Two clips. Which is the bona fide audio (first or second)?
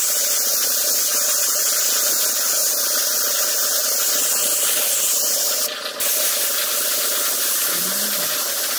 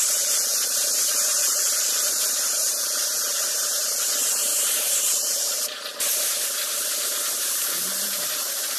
first